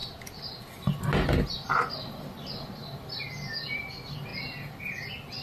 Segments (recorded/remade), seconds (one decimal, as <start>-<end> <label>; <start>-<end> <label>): 0.0-5.4 recorded